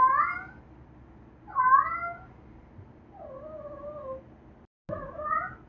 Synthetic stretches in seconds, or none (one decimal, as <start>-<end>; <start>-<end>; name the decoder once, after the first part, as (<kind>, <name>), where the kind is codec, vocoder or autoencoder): none